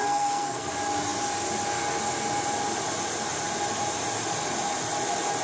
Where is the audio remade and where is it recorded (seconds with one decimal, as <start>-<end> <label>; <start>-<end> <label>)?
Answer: 0.0-0.7 remade; 0.7-5.4 recorded